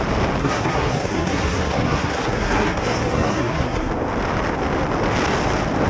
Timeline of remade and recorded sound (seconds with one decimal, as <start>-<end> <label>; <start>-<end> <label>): 0.0-0.4 recorded; 0.4-3.9 remade; 3.9-5.9 recorded